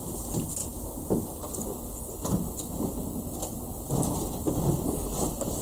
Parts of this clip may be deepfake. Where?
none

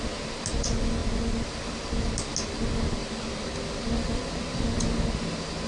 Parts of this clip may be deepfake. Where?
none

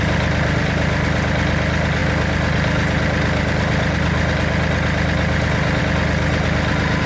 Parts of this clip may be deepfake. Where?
none

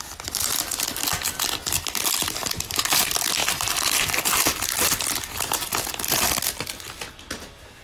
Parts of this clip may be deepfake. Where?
2.2-2.8 (vocoder, BigVGAN v2)

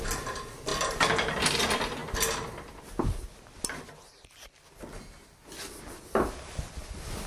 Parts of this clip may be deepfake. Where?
0.7-1.6 (vocoder, BigVGAN v2)

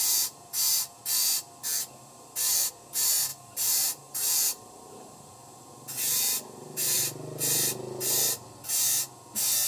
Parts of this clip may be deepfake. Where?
0.0-1.0 (vocoder, BigVGAN v2); 1.7-2.7; 3.3-7.0

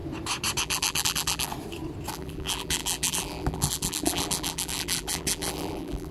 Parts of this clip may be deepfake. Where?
0.6-1.5 (vocoder, BigVGAN v2); 2.1-6.1

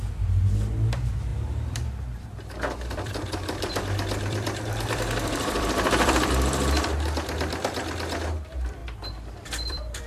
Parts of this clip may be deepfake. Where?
1.3-6.3 (vocoder, BigVGAN v2); 8.8-10.1